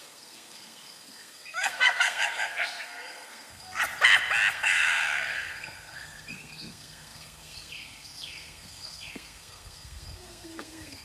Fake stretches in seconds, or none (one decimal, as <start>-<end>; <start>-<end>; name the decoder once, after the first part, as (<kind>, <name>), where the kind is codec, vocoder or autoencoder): 0.0-3.8 (codec, SNAC); 4.5-11.0